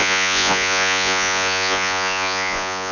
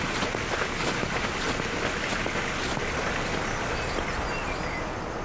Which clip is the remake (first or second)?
first